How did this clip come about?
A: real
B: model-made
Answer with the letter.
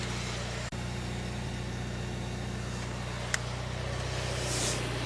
A